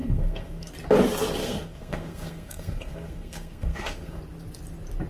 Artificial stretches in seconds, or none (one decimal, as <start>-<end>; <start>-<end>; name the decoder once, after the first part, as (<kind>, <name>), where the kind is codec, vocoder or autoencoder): 0.0-0.7 (codec, SNAC); 1.4-4.2